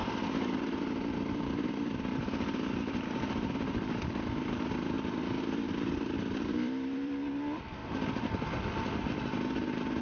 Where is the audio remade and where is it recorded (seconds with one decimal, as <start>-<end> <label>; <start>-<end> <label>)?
0.0-7.8 remade; 7.8-10.0 recorded